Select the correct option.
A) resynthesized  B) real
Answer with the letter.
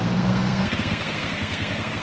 A